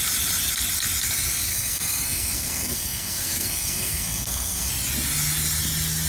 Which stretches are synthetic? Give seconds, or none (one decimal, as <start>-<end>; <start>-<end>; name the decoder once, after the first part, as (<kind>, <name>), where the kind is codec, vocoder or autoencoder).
1.5-4.7 (codec, SNAC)